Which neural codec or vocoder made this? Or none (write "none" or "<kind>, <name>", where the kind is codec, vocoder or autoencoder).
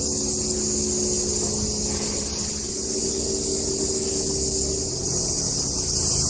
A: none